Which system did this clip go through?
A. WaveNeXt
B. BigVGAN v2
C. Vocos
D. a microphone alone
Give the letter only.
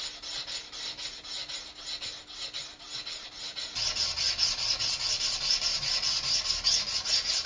D